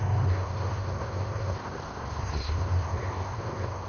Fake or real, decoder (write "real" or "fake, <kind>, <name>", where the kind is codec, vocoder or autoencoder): fake, codec, SNAC